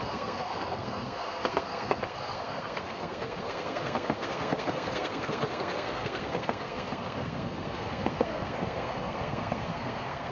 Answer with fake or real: fake